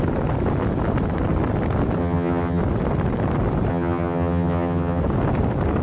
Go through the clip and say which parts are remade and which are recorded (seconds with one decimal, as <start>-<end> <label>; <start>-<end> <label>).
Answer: 0.0-2.0 recorded; 2.0-2.6 remade; 2.6-3.7 recorded; 3.7-5.0 remade; 5.0-5.8 recorded